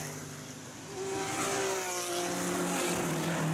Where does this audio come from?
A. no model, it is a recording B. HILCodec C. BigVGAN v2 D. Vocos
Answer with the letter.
A